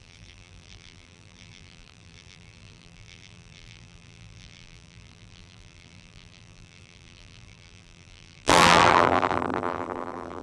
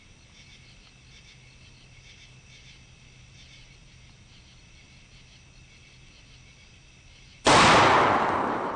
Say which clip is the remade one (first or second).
first